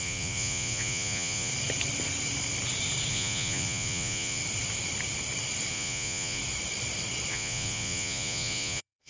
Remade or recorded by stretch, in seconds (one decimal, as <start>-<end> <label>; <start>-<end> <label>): 0.0-1.5 remade; 1.5-3.1 recorded; 3.1-4.4 remade; 4.4-5.7 recorded; 5.7-6.4 remade; 6.4-7.3 recorded; 7.3-9.1 remade